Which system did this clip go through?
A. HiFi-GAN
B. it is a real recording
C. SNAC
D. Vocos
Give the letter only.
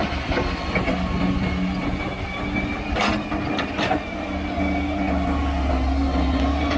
B